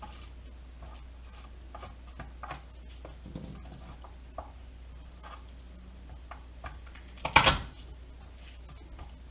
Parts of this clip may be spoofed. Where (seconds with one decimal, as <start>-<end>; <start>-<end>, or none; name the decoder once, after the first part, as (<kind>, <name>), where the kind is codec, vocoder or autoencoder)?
4.6-7.8 (vocoder, BigVGAN v2)